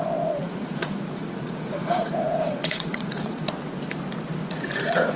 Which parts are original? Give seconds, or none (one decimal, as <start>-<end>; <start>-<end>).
0.0-0.4; 3.5-4.4